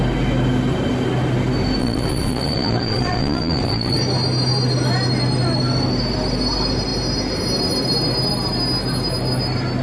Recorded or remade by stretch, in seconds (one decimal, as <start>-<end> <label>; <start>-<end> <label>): 0.0-1.8 recorded; 1.8-4.0 remade; 4.0-9.8 recorded